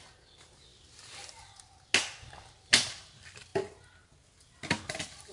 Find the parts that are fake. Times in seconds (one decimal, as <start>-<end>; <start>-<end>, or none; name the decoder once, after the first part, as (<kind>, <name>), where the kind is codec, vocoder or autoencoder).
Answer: none